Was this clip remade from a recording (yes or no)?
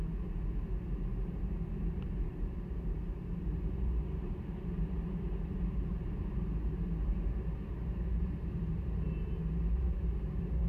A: yes